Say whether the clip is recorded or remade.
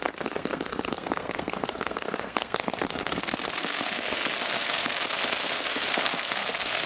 remade